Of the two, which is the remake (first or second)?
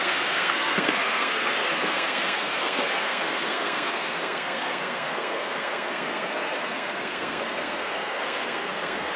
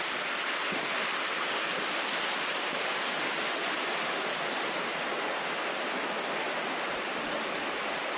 first